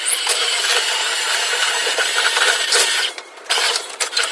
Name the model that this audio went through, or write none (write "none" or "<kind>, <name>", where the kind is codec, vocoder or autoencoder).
vocoder, BigVGAN v2